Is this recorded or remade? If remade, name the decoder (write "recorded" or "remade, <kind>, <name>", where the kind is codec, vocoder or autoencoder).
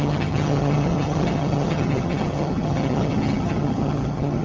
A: remade, vocoder, HiFi-GAN